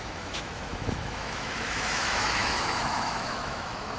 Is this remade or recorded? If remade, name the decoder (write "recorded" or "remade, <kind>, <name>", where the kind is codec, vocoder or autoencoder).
remade, autoencoder, DAC-VAE